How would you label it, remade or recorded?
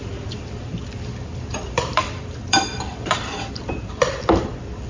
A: remade